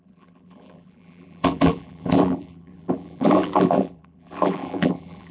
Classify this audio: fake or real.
fake